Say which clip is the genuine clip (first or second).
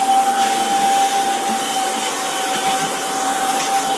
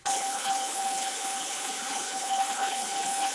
first